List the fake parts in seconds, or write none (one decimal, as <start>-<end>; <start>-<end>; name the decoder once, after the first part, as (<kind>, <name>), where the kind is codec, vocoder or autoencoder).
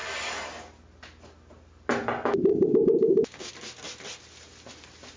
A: 2.5-3.5 (codec, DAC)